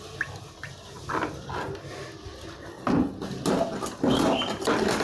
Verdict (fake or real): real